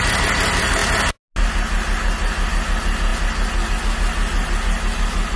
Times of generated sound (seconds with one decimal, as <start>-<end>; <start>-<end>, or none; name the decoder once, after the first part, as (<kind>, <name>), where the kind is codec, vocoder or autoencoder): none